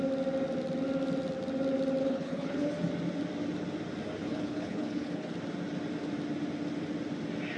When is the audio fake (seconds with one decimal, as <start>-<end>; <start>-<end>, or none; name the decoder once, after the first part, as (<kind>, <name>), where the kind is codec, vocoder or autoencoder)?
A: 2.0-2.7 (codec, HILCodec); 4.2-5.3